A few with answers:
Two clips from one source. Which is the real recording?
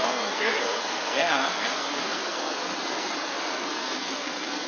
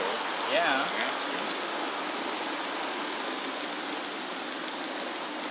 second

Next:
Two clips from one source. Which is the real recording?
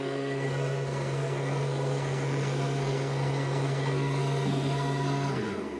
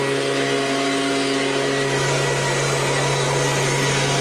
second